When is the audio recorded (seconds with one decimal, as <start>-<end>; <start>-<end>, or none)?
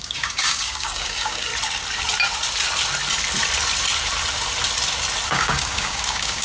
1.5-5.3